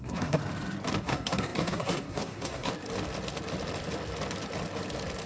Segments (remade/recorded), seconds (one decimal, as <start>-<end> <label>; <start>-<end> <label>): 0.0-0.4 remade; 0.4-1.0 recorded; 1.0-2.7 remade; 2.7-5.3 recorded